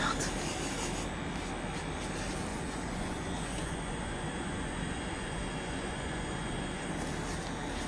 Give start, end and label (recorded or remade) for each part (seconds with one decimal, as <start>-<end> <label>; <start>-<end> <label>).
0.0-2.5 recorded; 2.5-6.9 remade; 6.9-7.9 recorded